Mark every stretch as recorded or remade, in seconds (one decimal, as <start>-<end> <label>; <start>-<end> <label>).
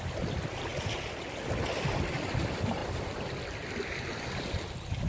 0.0-5.1 recorded